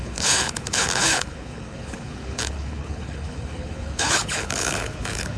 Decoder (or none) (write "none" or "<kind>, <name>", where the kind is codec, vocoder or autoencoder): codec, HILCodec